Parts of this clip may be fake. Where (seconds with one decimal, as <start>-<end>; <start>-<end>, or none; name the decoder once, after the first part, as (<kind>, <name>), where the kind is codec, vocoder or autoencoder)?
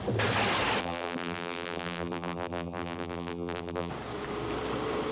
0.8-3.9 (vocoder, BigVGAN v2)